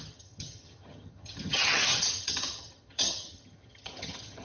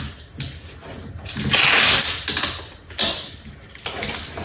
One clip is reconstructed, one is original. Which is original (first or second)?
second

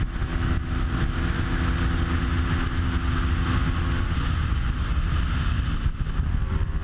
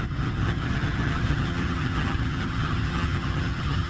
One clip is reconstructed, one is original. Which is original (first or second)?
first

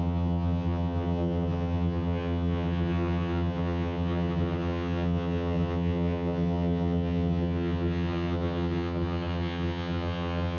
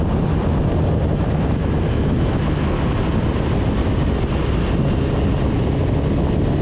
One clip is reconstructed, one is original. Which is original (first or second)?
second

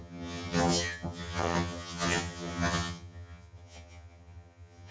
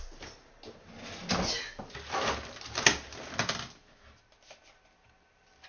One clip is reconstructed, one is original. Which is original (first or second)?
second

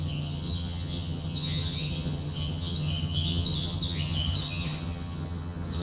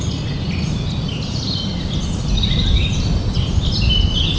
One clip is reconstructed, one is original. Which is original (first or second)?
second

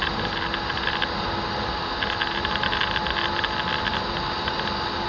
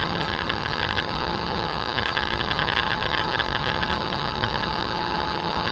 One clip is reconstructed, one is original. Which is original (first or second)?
first